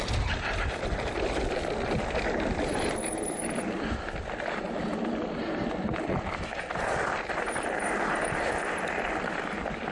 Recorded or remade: recorded